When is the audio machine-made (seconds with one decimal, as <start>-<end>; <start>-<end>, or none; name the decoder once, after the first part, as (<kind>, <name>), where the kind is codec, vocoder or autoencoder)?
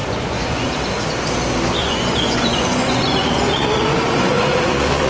0.0-0.7 (vocoder, Vocos); 1.8-5.1